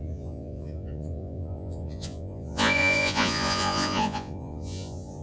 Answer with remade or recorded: remade